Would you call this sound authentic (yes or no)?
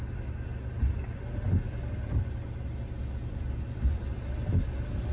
yes